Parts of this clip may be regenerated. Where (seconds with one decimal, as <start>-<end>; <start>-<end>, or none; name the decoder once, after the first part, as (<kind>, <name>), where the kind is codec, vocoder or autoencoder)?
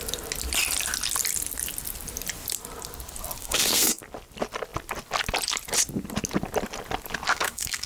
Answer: 3.4-4.0 (codec, SNAC); 7.3-7.9